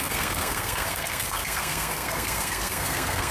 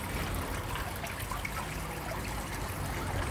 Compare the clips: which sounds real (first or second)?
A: second